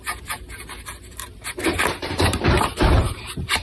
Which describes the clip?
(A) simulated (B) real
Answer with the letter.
A